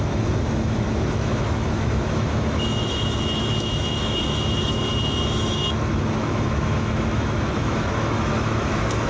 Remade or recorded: remade